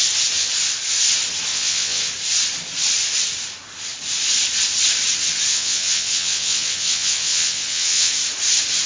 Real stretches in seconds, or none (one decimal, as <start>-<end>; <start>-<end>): 0.0-1.5; 2.0-5.5; 8.1-8.9